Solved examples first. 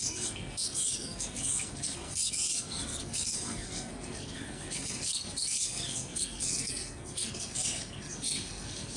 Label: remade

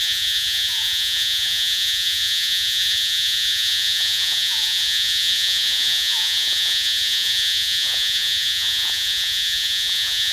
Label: remade